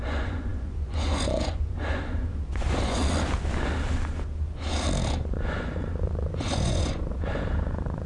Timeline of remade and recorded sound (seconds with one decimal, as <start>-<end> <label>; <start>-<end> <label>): 0.0-3.0 remade; 3.0-5.3 recorded; 5.3-8.1 remade